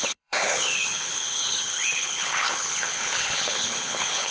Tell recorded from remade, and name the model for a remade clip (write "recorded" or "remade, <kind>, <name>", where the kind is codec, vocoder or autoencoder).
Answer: remade, codec, HILCodec